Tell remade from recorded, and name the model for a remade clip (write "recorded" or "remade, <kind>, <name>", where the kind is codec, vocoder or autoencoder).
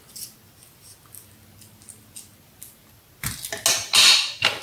recorded